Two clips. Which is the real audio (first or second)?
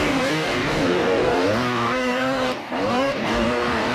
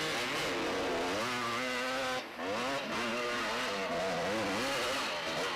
second